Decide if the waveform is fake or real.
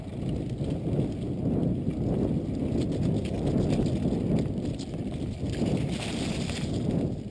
real